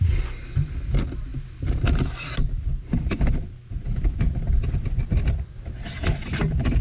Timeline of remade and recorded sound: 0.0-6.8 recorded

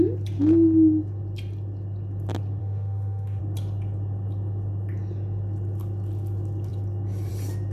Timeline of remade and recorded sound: 0.0-2.6 recorded; 2.6-3.4 remade; 3.4-7.7 recorded

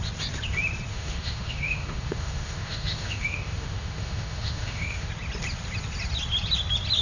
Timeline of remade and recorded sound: 0.0-0.9 recorded; 0.9-5.1 remade; 5.1-7.0 recorded

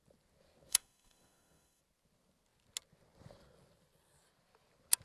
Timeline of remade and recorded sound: 0.0-0.7 recorded; 0.7-1.8 remade; 1.8-5.0 recorded